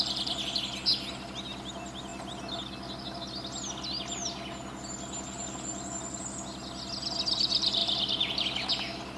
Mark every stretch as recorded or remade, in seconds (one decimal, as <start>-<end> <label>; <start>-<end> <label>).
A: 0.0-9.2 recorded